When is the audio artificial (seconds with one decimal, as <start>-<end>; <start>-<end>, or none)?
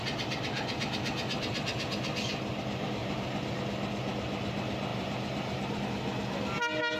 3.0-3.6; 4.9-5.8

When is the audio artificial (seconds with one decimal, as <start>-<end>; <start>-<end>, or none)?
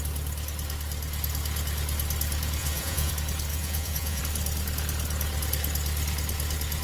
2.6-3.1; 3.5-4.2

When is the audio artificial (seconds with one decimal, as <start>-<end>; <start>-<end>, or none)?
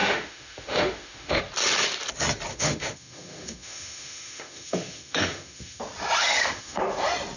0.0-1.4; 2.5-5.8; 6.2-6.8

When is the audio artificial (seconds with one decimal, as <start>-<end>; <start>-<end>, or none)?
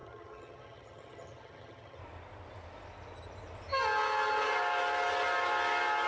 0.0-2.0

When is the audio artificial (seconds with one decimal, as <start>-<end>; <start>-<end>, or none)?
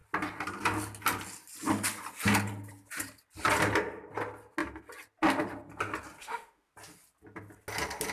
6.2-6.7